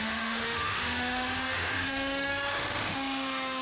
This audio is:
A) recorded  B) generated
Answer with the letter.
B